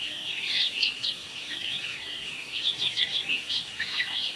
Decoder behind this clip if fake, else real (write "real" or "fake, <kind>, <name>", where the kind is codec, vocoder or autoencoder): fake, codec, SNAC